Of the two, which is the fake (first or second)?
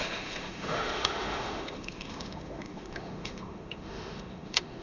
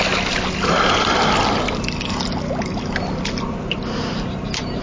first